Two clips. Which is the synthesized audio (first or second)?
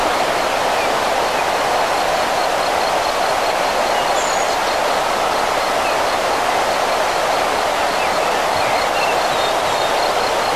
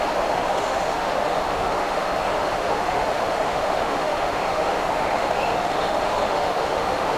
second